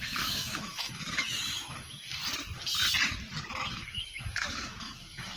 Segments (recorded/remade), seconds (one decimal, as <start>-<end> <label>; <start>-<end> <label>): 0.0-2.2 remade; 2.2-3.6 recorded; 3.6-5.4 remade